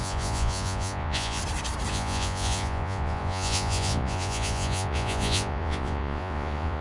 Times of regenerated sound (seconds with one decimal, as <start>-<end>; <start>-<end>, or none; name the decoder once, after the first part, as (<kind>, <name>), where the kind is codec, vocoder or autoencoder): 0.0-1.4 (vocoder, Vocos); 1.9-6.8